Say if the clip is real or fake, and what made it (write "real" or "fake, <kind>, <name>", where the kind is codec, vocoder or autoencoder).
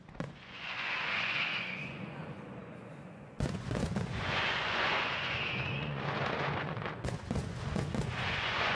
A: fake, vocoder, Vocos